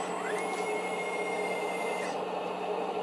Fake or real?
real